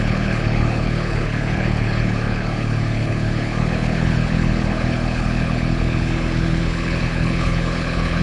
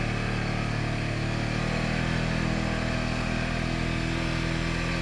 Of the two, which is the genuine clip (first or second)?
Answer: second